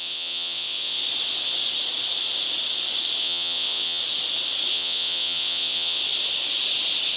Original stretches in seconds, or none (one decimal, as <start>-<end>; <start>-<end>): 1.0-3.2; 4.0-4.7; 6.0-7.2